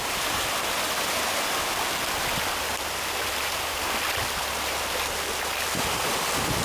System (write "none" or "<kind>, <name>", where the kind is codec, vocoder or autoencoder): none